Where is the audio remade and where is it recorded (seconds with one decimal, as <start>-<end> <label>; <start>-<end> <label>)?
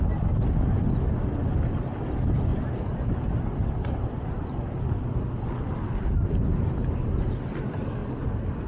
0.0-8.7 recorded